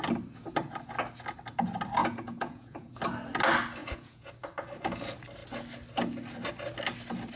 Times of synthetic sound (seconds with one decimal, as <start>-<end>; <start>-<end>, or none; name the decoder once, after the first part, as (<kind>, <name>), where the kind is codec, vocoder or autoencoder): 2.0-2.9 (vocoder, Vocos); 3.8-4.3